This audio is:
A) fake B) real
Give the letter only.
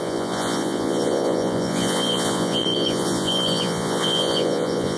A